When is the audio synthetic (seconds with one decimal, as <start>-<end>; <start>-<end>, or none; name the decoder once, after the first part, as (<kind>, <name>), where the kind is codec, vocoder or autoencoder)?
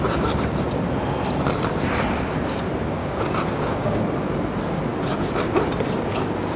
3.0-4.0 (codec, DAC)